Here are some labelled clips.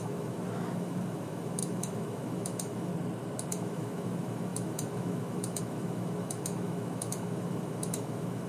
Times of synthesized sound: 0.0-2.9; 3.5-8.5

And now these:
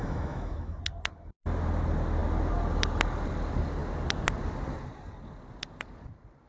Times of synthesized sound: 0.0-0.8

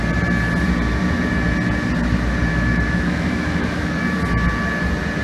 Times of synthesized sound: 2.5-4.0

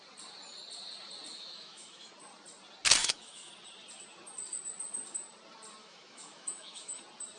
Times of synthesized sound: 1.3-2.1; 3.0-3.5; 5.8-7.0

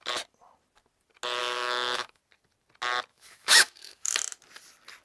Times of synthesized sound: 1.4-2.2; 3.1-4.1

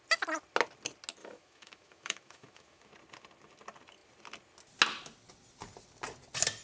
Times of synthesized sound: 1.2-2.9

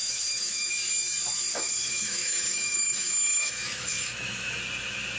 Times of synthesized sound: 0.0-0.7; 1.5-4.6

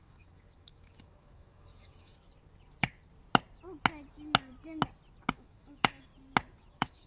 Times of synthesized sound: 0.0-2.3; 5.3-6.1; 6.6-7.1